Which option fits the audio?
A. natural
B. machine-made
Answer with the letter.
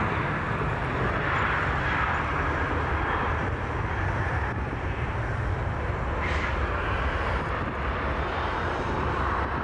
A